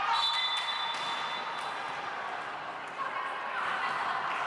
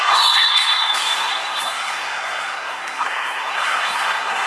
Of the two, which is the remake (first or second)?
second